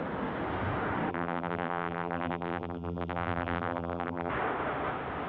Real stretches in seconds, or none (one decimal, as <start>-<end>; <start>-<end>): 0.0-1.1; 4.3-5.3